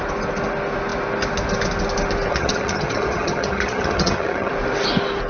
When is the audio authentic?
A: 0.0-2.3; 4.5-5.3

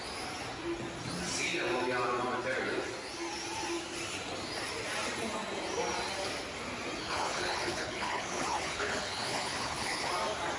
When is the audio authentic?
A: 0.0-7.0; 10.1-10.6